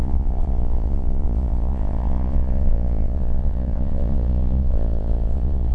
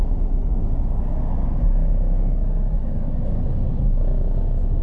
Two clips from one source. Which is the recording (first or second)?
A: second